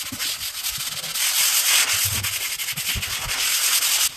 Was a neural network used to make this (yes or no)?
no